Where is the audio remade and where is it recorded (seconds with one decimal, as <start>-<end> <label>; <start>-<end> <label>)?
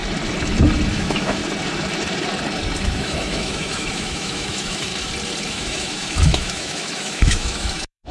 0.0-0.9 recorded; 0.9-1.4 remade; 1.4-2.8 recorded; 2.8-4.9 remade; 4.9-5.5 recorded; 5.5-8.1 remade